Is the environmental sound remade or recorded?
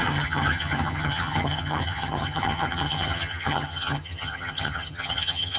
remade